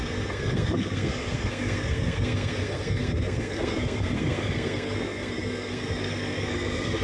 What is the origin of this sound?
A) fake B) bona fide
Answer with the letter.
A